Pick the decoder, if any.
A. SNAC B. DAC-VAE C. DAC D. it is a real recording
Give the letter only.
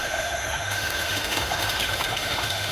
B